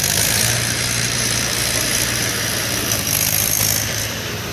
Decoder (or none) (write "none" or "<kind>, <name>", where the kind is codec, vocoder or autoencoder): vocoder, BigVGAN v2